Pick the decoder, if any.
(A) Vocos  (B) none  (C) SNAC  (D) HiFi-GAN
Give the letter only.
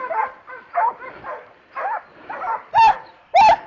B